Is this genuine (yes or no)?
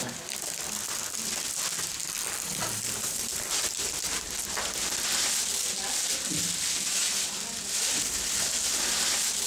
yes